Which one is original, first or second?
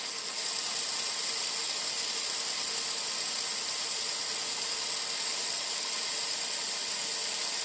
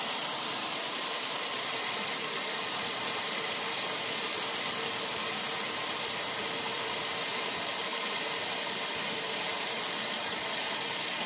first